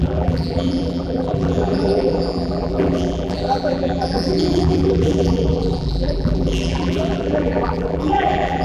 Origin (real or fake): fake